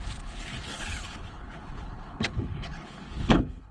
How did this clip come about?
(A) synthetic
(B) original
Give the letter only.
A